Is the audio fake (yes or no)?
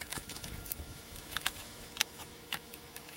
yes